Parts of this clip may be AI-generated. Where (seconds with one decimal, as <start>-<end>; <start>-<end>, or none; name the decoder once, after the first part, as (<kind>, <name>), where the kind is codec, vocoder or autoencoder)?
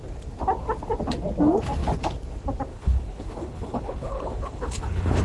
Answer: 2.7-5.2 (codec, HILCodec)